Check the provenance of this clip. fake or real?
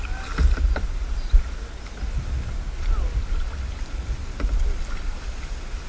real